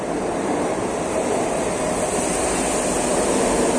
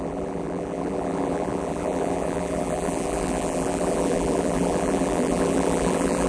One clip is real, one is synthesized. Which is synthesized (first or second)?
second